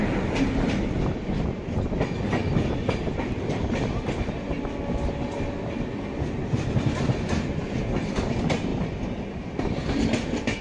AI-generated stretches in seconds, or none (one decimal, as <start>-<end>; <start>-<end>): none